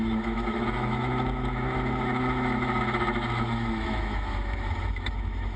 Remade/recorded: remade